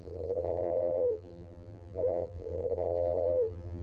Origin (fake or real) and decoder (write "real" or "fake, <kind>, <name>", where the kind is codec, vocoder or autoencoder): fake, vocoder, BigVGAN v2